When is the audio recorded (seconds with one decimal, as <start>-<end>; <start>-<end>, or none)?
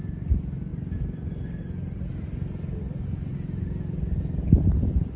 0.0-5.2